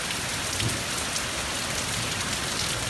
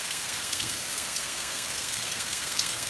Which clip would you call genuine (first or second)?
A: first